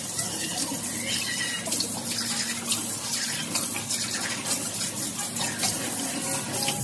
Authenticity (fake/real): real